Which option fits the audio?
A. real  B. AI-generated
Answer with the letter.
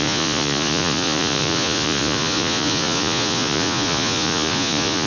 B